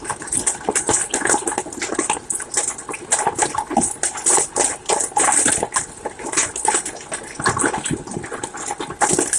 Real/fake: real